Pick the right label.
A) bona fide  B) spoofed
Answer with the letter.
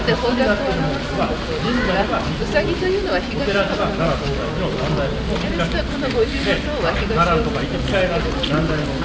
A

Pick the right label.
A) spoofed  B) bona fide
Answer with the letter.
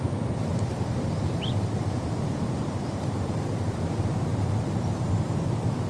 A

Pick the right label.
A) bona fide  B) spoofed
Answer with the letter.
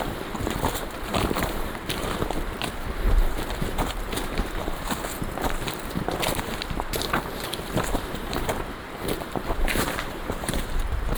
B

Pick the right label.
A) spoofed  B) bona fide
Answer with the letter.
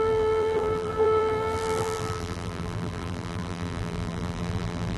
A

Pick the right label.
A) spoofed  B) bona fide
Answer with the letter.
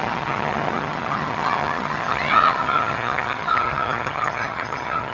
A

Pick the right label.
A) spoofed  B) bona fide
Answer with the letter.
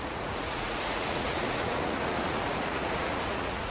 A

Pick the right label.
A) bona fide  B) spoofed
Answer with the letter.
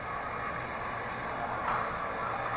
A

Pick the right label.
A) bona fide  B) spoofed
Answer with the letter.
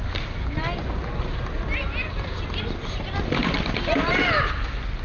A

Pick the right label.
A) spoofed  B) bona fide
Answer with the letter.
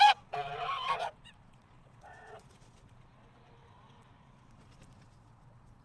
A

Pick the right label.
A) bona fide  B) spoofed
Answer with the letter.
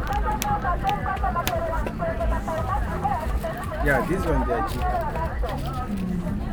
A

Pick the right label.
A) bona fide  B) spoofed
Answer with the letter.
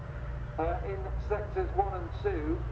A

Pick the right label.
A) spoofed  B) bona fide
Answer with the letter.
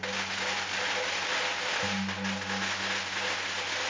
B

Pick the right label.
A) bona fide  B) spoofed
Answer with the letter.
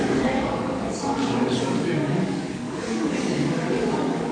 B